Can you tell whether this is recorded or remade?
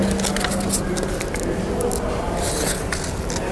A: recorded